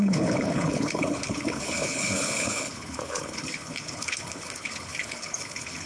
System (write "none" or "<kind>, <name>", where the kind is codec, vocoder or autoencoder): codec, HILCodec